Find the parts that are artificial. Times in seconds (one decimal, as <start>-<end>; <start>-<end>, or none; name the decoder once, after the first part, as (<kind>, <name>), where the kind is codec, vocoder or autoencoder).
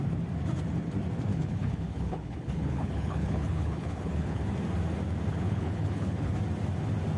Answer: 1.3-4.4 (codec, HILCodec); 5.3-6.3